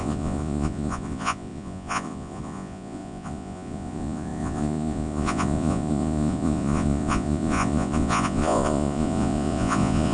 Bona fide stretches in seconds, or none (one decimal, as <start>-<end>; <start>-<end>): none